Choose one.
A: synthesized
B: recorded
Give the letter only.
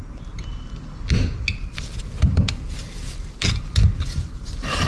B